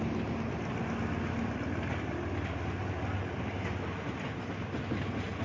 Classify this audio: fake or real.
real